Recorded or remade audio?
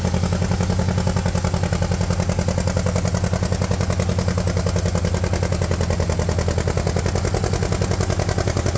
recorded